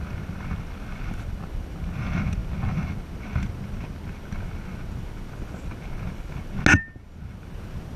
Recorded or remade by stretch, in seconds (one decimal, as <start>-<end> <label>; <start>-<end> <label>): 0.0-8.0 recorded